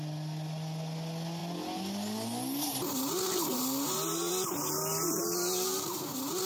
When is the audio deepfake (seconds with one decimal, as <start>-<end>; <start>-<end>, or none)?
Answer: none